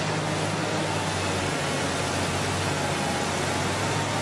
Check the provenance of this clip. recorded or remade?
recorded